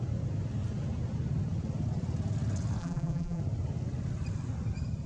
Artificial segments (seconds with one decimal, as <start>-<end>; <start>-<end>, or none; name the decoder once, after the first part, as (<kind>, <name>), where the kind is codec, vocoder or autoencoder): 2.8-3.4 (vocoder, BigVGAN v2)